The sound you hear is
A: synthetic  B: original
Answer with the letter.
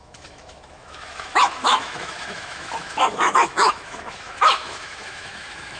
A